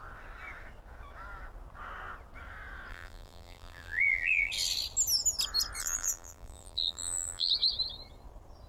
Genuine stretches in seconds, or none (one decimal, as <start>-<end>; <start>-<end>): 0.0-2.9; 4.5-5.8; 7.5-8.7